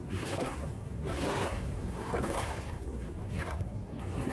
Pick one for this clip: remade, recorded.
remade